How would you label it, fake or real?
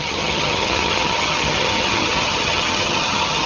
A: fake